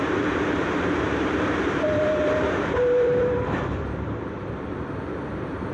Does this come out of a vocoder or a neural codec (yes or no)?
yes